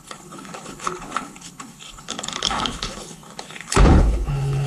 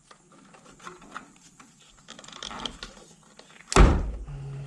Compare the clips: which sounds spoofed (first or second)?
first